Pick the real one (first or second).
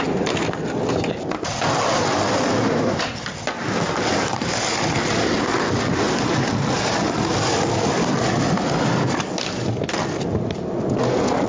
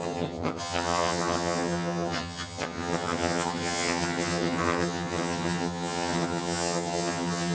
first